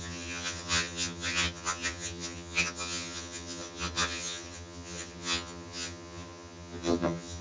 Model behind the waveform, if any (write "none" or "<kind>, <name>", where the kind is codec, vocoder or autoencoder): vocoder, HiFi-GAN